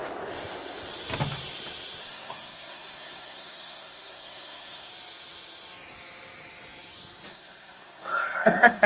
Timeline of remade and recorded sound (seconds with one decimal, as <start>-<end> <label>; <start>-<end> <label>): 0.0-2.0 recorded; 2.0-4.9 remade; 4.9-7.3 recorded; 7.3-8.9 remade